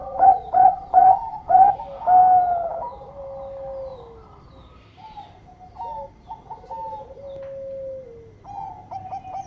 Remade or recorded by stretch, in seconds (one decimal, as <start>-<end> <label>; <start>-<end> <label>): 0.0-1.7 remade; 1.7-9.5 recorded